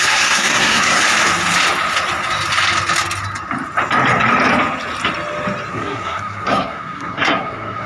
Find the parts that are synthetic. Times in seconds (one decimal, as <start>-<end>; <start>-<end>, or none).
0.0-1.0; 5.7-7.9